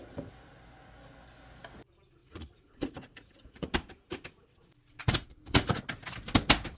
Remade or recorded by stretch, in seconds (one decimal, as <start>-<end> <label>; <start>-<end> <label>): 0.0-2.2 recorded; 2.2-3.7 remade; 3.7-4.9 recorded; 4.9-5.8 remade; 5.8-6.8 recorded